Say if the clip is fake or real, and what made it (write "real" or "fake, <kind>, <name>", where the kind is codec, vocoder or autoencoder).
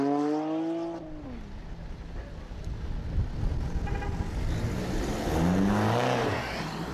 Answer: real